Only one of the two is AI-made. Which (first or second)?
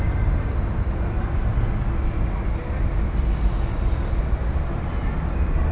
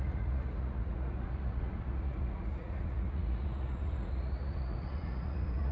second